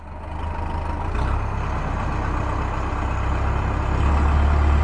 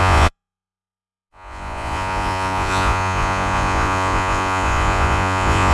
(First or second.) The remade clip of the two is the second